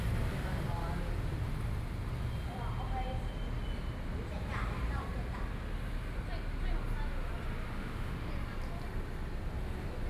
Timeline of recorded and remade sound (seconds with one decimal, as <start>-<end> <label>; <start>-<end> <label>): 0.0-7.7 recorded; 7.7-8.3 remade; 8.3-10.1 recorded